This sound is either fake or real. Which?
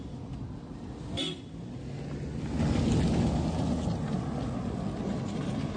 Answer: real